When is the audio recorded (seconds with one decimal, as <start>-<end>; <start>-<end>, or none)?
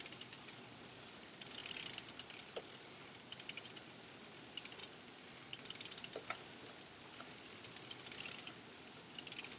0.0-1.6; 3.9-9.6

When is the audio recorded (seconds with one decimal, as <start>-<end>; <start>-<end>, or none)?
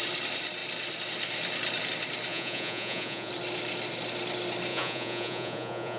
0.0-2.3; 3.3-4.7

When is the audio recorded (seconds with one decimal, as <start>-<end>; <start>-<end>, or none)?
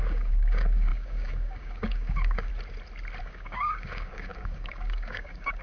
2.5-3.2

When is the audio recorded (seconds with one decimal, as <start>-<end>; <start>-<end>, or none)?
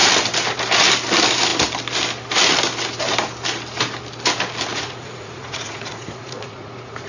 0.0-4.7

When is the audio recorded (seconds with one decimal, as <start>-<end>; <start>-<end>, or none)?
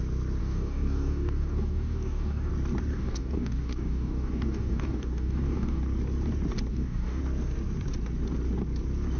0.0-0.4; 2.5-2.9; 5.8-6.7; 7.2-9.2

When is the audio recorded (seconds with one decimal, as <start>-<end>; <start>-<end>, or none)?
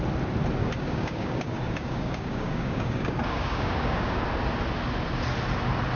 0.0-0.6; 4.2-6.0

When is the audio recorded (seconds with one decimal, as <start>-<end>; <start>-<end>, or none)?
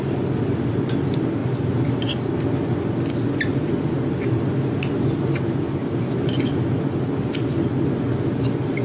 0.0-8.8